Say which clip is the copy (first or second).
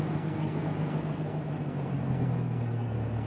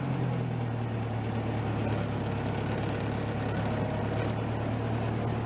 first